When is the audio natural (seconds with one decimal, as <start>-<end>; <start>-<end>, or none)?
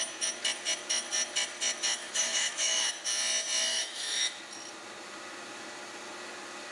0.0-2.0; 2.9-3.7; 4.4-6.7